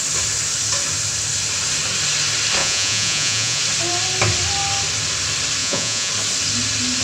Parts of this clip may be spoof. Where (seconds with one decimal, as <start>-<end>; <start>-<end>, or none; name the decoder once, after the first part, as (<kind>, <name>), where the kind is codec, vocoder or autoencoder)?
2.6-3.6 (vocoder, Vocos); 5.6-6.1